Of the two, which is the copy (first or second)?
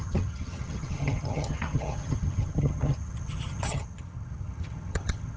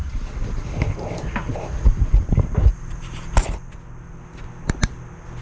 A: first